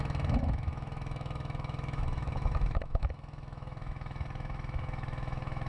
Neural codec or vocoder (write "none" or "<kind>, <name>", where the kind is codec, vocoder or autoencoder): autoencoder, DAC-VAE